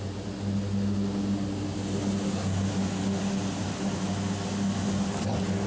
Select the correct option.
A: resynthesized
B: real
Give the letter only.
B